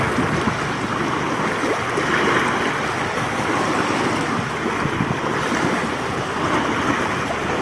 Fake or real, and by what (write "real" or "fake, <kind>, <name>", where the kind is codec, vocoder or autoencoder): real